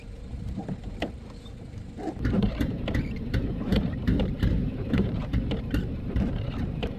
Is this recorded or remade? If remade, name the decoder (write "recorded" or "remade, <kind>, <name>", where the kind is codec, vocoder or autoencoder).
remade, vocoder, BigVGAN v2